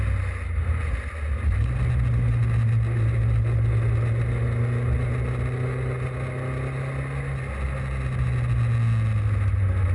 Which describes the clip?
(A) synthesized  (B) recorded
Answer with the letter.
B